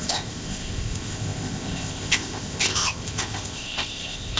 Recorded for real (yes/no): no